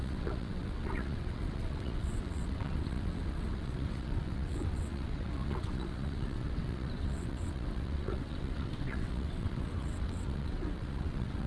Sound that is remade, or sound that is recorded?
remade